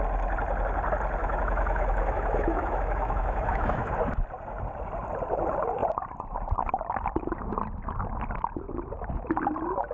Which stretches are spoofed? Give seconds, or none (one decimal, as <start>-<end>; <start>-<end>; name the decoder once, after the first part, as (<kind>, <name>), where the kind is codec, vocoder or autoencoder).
1.2-3.9 (autoencoder, DAC-VAE)